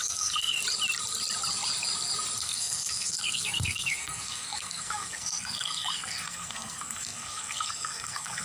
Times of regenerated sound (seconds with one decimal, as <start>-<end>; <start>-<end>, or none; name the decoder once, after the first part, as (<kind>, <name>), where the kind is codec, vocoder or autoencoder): 0.0-0.6 (codec, SNAC); 2.4-8.4